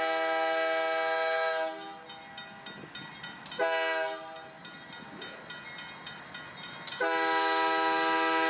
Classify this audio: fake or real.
real